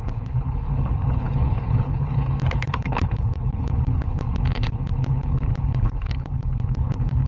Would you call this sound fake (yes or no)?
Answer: yes